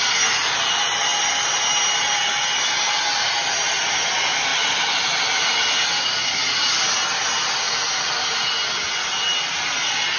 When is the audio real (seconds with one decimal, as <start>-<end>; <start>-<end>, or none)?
0.0-10.2